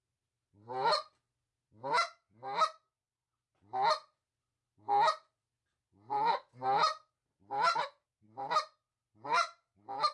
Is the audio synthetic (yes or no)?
no